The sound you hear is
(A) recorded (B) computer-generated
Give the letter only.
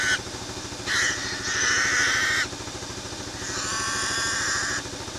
A